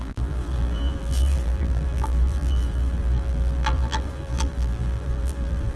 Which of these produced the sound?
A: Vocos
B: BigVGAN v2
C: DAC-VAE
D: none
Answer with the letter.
B